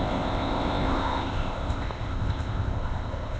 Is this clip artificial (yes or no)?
yes